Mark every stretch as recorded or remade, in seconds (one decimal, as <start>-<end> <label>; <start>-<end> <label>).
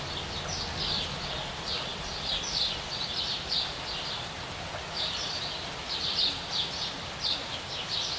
0.0-8.2 recorded